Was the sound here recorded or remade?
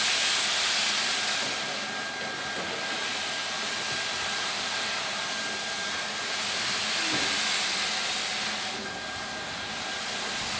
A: recorded